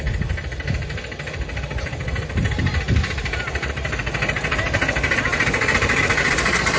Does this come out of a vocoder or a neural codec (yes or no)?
no